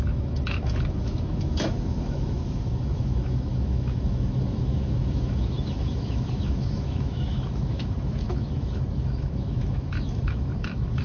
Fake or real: fake